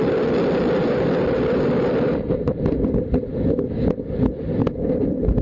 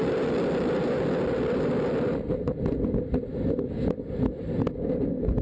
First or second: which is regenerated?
first